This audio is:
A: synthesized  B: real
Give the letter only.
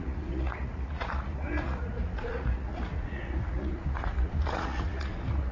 A